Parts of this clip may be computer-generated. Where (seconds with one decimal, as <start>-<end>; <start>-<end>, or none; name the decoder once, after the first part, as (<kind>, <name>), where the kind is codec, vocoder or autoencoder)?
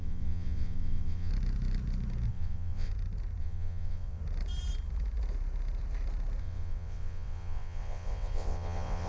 0.0-1.3 (vocoder, WaveNeXt); 2.3-2.9; 3.4-4.2; 6.4-9.1